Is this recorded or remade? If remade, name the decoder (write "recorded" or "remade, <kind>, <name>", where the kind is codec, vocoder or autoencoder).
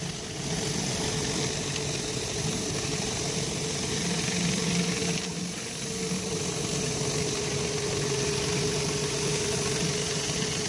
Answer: recorded